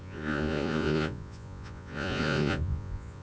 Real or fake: fake